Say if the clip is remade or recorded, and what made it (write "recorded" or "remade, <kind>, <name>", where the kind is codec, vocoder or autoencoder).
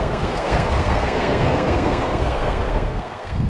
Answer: remade, codec, SNAC